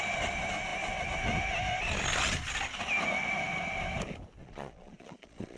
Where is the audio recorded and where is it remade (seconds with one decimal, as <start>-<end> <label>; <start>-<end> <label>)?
0.0-4.4 recorded; 4.4-5.6 remade